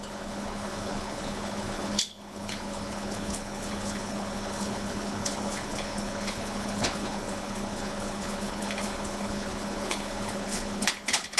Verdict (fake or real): fake